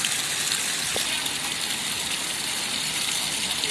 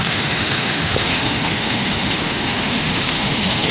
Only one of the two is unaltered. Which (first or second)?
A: first